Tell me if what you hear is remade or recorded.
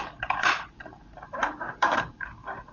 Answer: remade